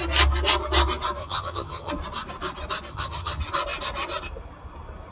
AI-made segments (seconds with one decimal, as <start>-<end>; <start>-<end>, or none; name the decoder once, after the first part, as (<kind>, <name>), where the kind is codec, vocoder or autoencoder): 1.2-1.9 (vocoder, HiFi-GAN); 2.9-3.4